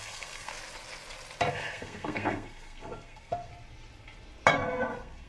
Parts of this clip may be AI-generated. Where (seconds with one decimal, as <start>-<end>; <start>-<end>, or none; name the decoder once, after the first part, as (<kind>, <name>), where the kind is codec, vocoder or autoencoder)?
0.0-0.5 (codec, SNAC); 1.5-3.5; 4.5-5.3